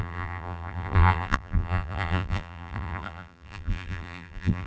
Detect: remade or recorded remade